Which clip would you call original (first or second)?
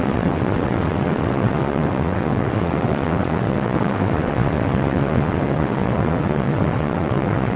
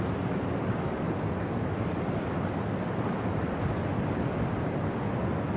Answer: second